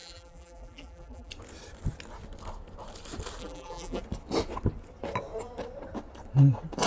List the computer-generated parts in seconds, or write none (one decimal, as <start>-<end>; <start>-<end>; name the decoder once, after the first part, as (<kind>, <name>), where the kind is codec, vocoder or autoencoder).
0.0-1.3 (vocoder, BigVGAN v2); 3.4-4.0